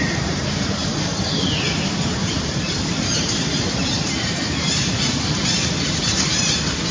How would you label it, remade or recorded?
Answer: remade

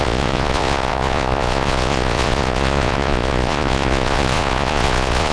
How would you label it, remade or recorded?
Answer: remade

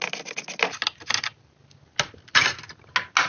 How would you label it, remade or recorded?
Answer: recorded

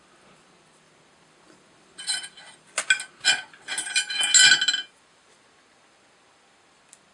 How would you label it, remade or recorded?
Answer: recorded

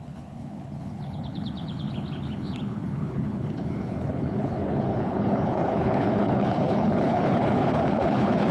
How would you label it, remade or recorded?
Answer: remade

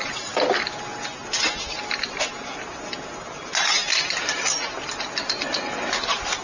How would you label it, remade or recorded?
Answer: recorded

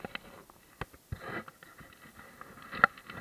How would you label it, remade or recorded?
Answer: recorded